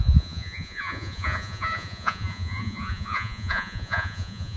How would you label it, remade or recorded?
remade